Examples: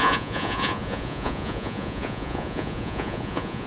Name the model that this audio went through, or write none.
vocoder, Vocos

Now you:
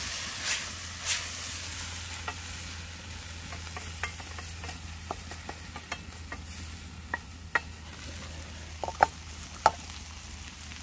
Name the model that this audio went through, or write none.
none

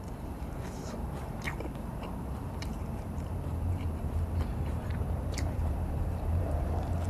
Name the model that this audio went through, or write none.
vocoder, BigVGAN v2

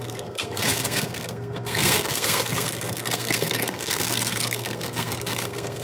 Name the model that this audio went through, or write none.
codec, SNAC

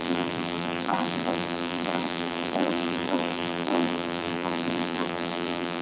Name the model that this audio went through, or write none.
vocoder, BigVGAN v2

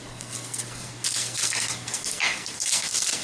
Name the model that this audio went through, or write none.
codec, SNAC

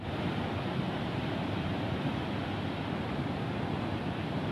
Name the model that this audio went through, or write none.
vocoder, BigVGAN v2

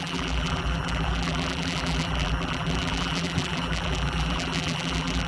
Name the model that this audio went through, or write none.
vocoder, BigVGAN v2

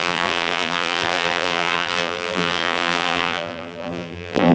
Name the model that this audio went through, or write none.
vocoder, BigVGAN v2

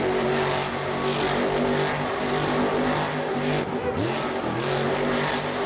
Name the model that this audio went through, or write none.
none